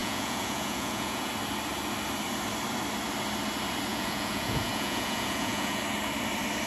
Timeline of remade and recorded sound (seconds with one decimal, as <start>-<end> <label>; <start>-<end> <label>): 0.0-1.3 remade; 1.3-3.9 recorded; 3.9-5.8 remade; 5.8-6.7 recorded